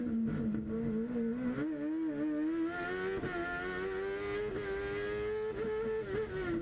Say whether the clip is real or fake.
real